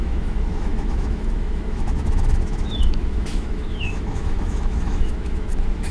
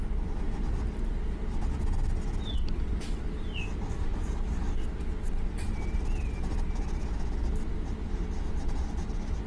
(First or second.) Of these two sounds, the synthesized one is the first